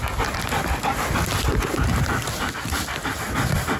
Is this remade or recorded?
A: recorded